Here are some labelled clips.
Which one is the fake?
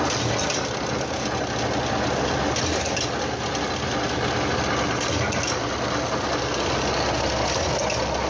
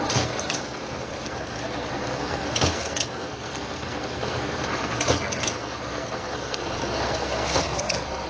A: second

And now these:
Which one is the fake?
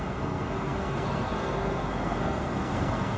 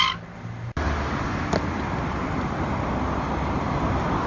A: first